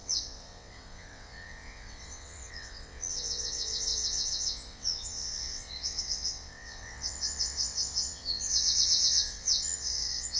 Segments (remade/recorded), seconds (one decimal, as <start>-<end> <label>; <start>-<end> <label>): 0.0-10.4 remade